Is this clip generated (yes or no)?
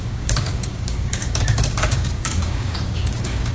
yes